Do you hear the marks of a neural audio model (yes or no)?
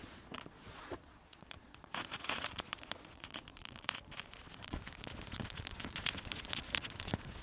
yes